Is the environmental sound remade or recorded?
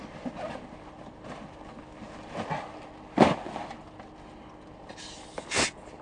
recorded